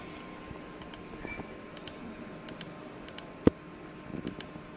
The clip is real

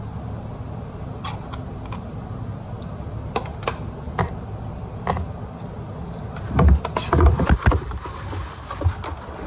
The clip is real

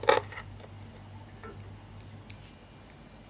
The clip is real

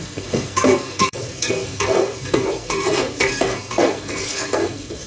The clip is fake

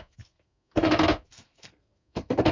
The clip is fake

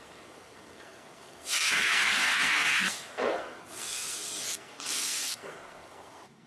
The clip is fake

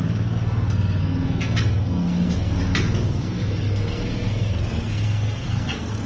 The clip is fake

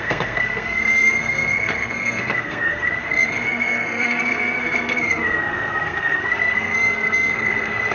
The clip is fake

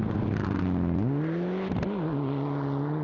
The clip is real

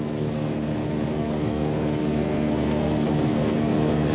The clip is fake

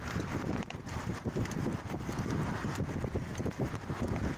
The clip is real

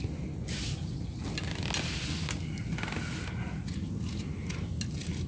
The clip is real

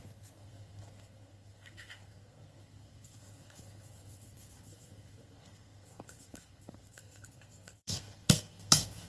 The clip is fake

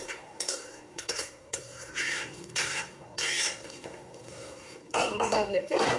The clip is fake